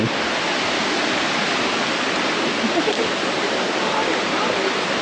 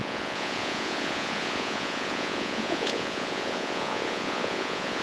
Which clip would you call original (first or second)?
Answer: first